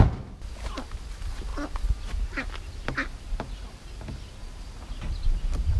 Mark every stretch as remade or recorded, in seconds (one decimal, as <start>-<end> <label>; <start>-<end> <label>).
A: 0.0-5.8 recorded